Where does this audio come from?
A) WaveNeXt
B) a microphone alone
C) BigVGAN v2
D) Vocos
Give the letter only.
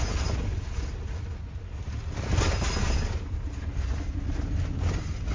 B